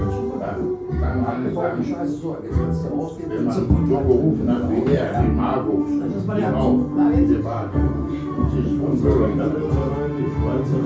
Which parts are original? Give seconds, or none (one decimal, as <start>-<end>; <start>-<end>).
0.0-1.1; 1.7-10.9